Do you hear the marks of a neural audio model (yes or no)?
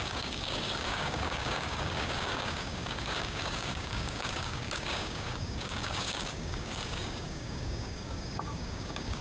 yes